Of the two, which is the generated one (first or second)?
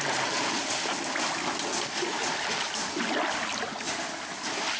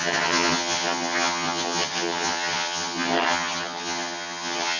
second